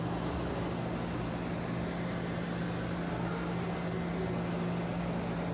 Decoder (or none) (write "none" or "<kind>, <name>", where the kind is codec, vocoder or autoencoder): none